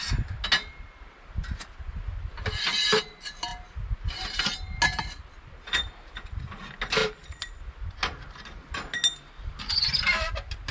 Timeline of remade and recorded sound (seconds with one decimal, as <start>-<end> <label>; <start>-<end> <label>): 0.0-10.7 recorded